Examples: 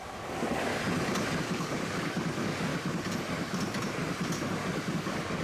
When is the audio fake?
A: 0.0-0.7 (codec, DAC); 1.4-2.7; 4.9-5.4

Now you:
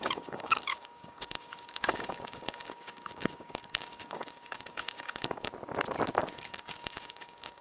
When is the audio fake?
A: 0.0-5.5 (codec, DAC); 6.3-7.6

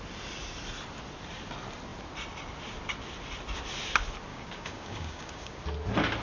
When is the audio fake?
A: 4.3-5.6 (codec, DAC)

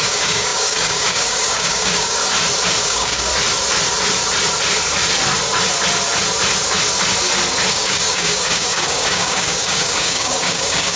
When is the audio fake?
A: 0.0-2.2 (codec, DAC); 2.8-3.3; 7.7-11.0

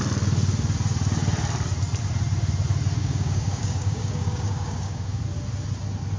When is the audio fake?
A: 3.0-5.2 (codec, DAC)

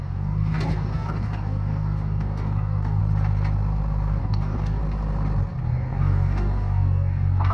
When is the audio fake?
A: 0.0-3.0 (codec, DAC); 4.2-4.8; 5.6-7.5